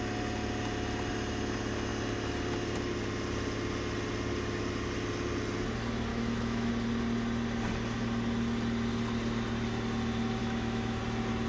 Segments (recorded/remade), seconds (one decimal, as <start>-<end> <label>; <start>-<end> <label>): 0.0-6.1 recorded; 6.1-6.7 remade; 6.7-10.4 recorded; 10.4-11.0 remade; 11.0-11.5 recorded